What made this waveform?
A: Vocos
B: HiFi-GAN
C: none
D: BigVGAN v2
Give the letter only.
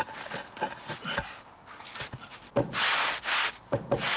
C